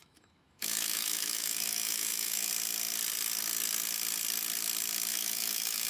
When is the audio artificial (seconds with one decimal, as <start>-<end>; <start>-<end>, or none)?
0.0-2.5; 5.1-5.9